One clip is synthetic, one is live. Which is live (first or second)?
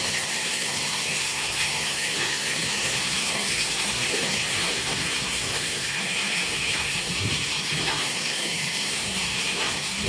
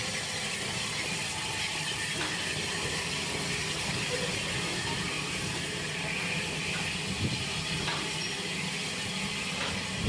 second